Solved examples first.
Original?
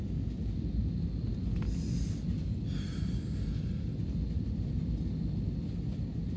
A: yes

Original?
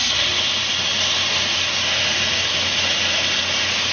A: yes